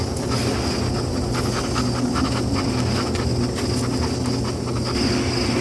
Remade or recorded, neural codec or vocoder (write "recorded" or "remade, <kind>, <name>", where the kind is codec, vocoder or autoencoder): recorded